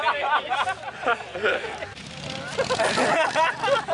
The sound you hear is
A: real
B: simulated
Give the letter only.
A